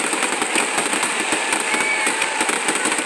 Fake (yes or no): no